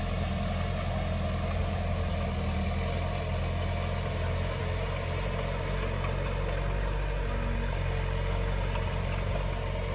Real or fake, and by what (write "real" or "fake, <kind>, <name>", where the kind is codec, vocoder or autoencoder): real